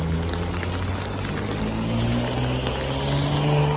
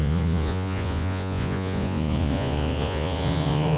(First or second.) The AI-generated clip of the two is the second